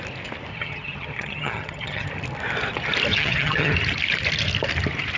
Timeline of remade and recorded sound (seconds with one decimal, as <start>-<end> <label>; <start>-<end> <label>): 0.0-0.5 recorded; 0.5-2.1 remade; 2.1-3.1 recorded; 3.1-3.7 remade; 3.7-5.2 recorded